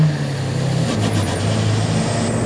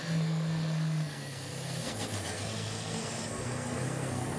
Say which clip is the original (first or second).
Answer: first